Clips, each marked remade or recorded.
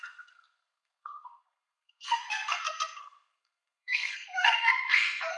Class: remade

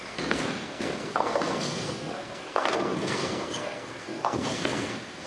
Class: remade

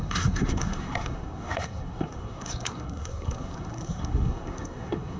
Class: remade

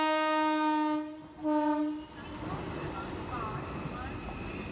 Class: recorded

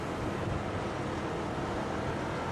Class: recorded